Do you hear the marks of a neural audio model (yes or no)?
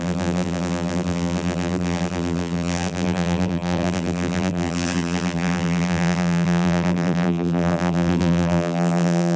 yes